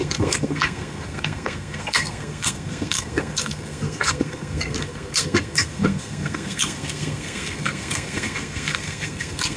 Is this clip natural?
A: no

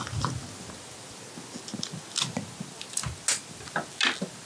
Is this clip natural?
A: yes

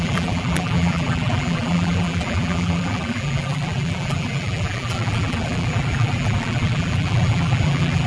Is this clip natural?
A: no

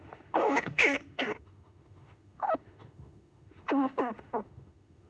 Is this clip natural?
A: no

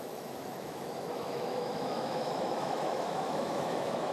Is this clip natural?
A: no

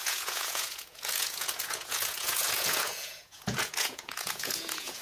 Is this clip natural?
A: no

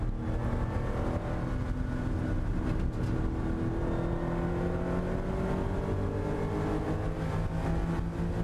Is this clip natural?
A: yes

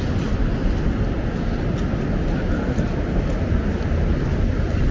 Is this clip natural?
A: yes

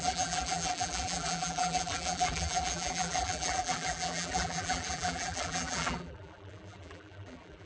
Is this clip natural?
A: no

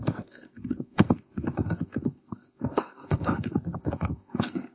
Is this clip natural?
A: no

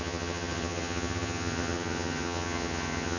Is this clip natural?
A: no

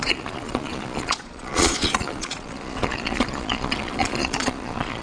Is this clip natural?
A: no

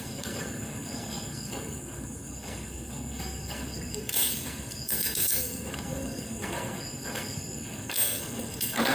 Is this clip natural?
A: no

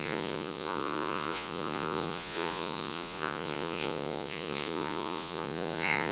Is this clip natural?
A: no